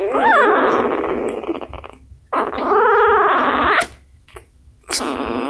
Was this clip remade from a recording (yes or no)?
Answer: yes